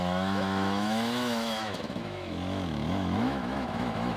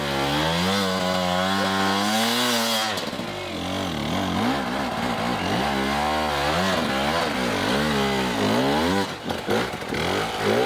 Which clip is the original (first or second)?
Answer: second